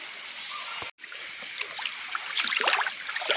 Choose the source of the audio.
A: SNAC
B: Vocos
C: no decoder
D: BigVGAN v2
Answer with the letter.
C